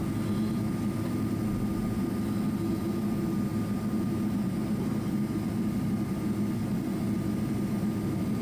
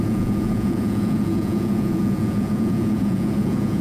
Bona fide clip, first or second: first